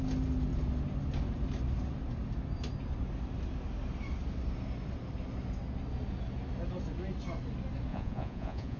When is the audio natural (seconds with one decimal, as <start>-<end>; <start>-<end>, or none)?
0.0-7.9